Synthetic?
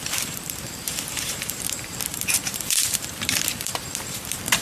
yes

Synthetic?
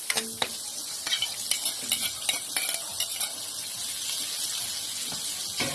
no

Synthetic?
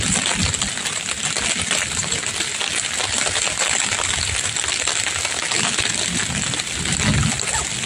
no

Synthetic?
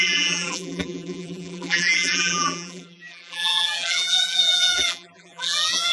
yes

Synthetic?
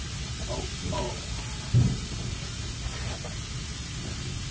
no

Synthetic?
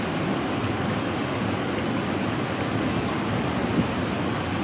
no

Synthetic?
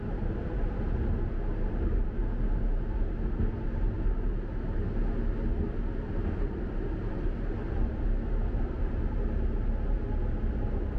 no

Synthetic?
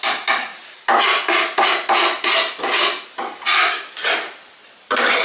no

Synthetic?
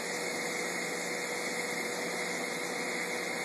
no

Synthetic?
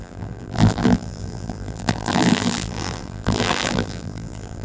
yes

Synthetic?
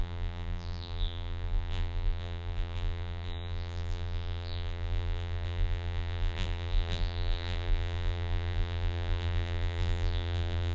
yes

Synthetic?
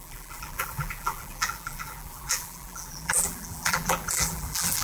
yes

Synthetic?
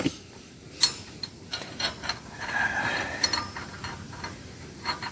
yes